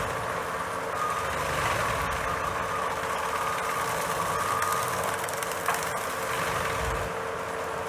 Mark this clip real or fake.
real